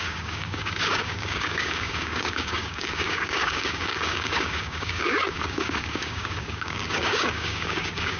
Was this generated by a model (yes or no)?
yes